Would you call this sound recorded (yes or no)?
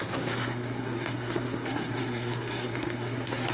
no